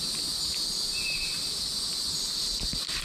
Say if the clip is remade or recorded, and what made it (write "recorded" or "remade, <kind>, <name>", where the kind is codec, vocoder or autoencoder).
recorded